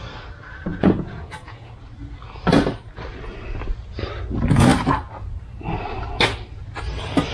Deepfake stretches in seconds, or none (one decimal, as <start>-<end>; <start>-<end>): 0.7-1.7